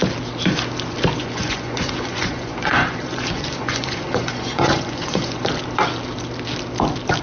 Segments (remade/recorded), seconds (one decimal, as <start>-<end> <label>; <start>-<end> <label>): 0.0-1.2 recorded; 1.2-5.5 remade; 5.5-7.2 recorded

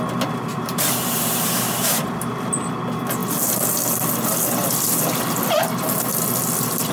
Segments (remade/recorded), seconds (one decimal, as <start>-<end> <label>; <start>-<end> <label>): 0.0-0.5 recorded; 0.5-2.3 remade; 2.3-6.9 recorded

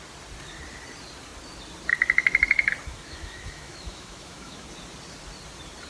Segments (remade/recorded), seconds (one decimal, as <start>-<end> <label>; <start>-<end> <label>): 0.0-2.9 recorded; 2.9-4.7 remade; 4.7-5.9 recorded

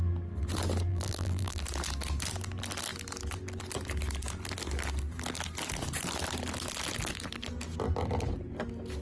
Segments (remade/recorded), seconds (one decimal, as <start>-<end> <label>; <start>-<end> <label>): 0.0-0.9 recorded; 0.9-1.6 remade; 1.6-9.0 recorded

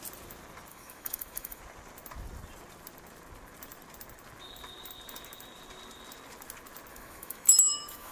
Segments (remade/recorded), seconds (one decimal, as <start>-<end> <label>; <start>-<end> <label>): 0.0-0.7 recorded; 0.7-1.6 remade; 1.6-6.9 recorded; 6.9-8.1 remade

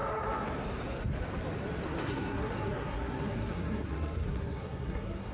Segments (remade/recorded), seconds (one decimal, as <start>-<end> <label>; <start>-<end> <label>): 0.0-2.0 recorded; 2.0-5.3 remade